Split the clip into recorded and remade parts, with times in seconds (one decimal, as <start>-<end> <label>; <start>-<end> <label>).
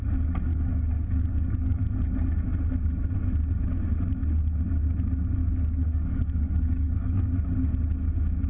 0.0-0.5 recorded; 0.5-1.8 remade; 1.8-5.4 recorded; 5.4-7.3 remade; 7.3-8.5 recorded